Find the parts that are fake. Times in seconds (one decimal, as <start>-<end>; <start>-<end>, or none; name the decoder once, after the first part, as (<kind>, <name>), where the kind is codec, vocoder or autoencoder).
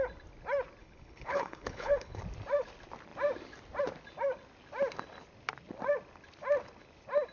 0.8-2.2 (codec, HILCodec)